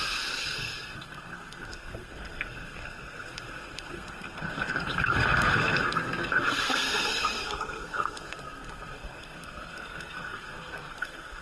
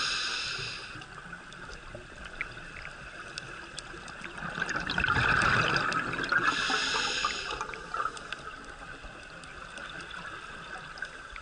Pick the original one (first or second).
second